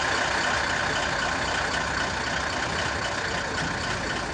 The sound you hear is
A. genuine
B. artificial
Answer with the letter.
A